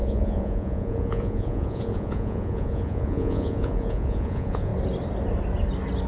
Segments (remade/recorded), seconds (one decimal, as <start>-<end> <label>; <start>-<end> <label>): 0.0-4.7 remade; 4.7-6.1 recorded